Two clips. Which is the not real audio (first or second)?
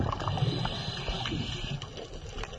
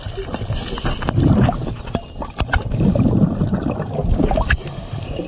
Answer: second